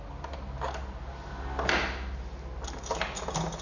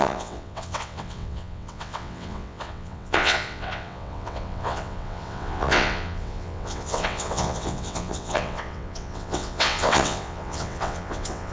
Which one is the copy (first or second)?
second